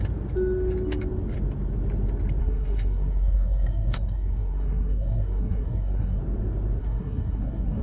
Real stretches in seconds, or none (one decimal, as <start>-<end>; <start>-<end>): 0.0-2.4; 6.2-6.8